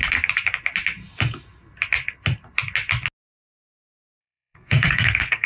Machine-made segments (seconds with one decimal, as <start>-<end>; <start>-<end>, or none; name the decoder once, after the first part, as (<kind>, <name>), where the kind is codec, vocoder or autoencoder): 4.2-5.5 (codec, SNAC)